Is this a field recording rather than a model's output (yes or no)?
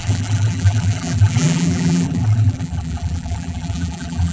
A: no